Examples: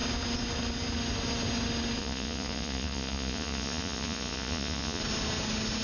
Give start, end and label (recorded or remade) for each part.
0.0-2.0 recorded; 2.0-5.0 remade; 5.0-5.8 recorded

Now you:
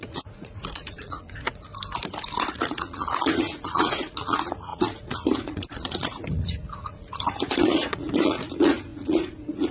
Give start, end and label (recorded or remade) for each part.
0.0-1.7 remade; 1.7-2.5 recorded; 2.5-9.7 remade

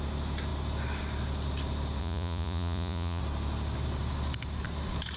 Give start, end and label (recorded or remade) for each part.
0.0-2.0 recorded; 2.0-3.2 remade; 3.2-5.2 recorded

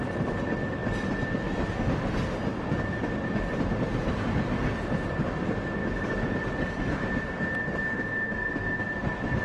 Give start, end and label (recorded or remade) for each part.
0.0-9.4 recorded

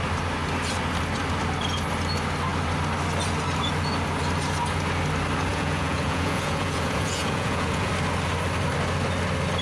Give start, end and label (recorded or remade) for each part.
0.0-5.5 recorded; 5.5-7.9 remade; 7.9-9.6 recorded